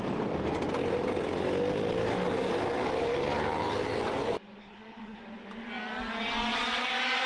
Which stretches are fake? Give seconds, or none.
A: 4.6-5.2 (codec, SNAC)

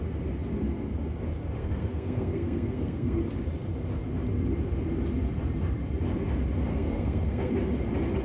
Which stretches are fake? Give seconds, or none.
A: 1.6-3.2 (codec, SNAC); 6.7-7.5

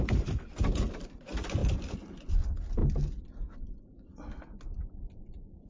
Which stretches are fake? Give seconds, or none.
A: none

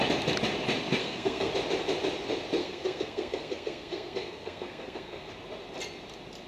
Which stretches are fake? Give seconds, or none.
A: 1.0-1.5 (codec, SNAC); 2.6-5.3

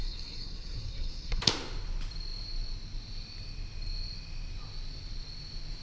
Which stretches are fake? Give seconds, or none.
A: 0.0-1.4 (codec, SNAC)

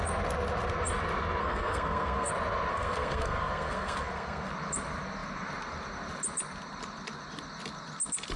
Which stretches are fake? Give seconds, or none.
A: 1.4-2.3 (codec, SNAC); 2.7-4.5